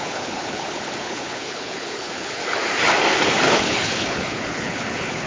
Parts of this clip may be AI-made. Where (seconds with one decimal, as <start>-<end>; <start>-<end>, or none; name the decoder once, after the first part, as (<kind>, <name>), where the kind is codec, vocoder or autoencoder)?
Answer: 0.0-2.4 (codec, HILCodec); 3.4-5.3

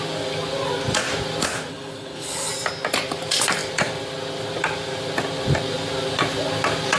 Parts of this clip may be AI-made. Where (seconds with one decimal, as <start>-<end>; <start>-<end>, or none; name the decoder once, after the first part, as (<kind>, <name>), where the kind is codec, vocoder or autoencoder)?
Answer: 1.7-2.5 (codec, HILCodec)